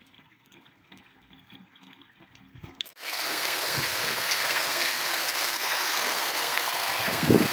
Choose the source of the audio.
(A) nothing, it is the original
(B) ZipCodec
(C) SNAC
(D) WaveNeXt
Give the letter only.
C